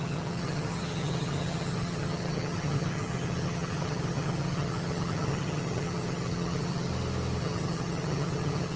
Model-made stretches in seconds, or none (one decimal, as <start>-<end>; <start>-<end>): 0.0-6.9; 7.4-8.8